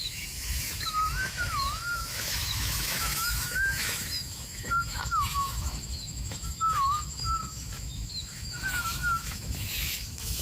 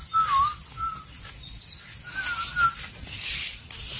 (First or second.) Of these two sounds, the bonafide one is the second